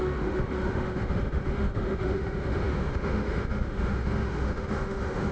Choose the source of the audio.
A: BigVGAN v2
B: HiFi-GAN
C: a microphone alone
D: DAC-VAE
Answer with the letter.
D